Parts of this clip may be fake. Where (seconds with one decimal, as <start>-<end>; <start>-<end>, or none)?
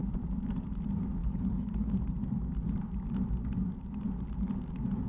1.2-2.0